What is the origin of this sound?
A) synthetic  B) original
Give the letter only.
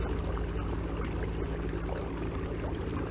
B